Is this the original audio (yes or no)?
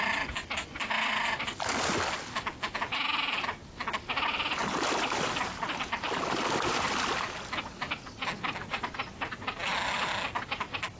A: yes